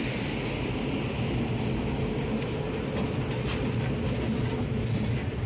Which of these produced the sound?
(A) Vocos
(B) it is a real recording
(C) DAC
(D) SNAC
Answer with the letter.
B